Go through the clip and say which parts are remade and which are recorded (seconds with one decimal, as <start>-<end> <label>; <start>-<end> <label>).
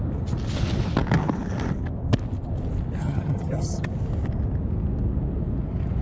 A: 0.0-3.0 recorded; 3.0-3.9 remade; 3.9-6.0 recorded